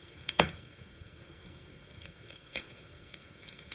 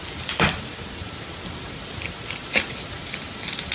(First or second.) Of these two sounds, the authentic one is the second